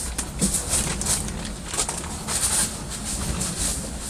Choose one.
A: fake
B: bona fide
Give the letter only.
B